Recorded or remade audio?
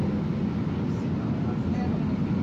recorded